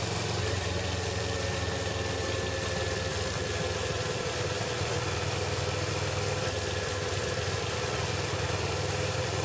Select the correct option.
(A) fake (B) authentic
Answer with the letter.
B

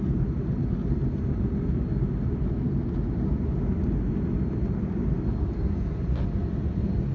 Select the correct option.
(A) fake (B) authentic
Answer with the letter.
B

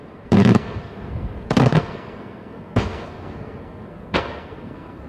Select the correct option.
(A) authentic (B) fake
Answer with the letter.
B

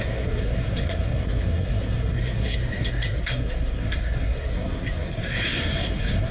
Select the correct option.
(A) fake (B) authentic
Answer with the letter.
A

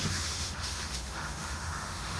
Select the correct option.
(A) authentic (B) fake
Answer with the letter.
B